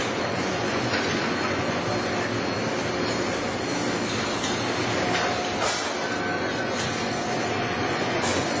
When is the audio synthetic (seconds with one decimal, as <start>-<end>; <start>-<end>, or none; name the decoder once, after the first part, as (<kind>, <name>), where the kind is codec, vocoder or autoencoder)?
0.0-1.9 (vocoder, Vocos); 6.4-8.6